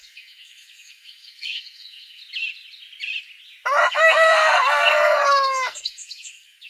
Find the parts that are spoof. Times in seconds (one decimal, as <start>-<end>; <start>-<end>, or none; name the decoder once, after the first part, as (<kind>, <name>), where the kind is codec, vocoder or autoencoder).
0.0-2.2 (codec, SNAC); 3.9-6.7